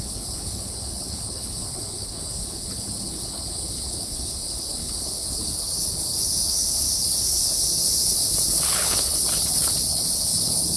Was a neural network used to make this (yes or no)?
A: yes